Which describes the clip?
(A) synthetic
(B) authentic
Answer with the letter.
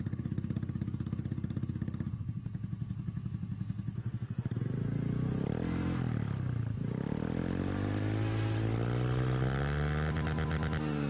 B